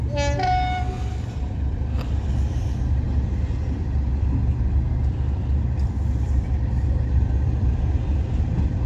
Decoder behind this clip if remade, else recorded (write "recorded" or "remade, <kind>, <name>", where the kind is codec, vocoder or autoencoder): recorded